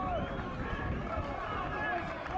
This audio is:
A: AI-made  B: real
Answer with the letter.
B